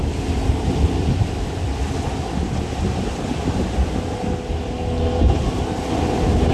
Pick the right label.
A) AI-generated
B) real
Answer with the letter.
B